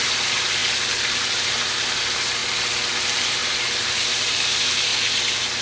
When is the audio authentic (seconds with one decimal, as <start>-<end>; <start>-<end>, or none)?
0.6-1.2; 2.4-3.0; 4.9-5.6